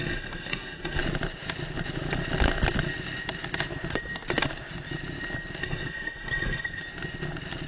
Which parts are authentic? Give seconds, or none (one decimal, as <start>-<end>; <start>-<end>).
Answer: 1.0-5.6; 6.8-7.7